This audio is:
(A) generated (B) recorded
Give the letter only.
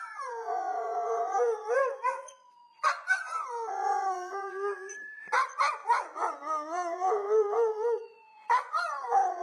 A